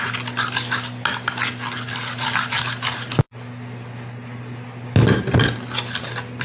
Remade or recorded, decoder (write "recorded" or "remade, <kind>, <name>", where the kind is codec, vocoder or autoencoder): recorded